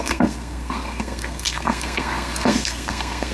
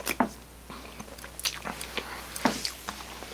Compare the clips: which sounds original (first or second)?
second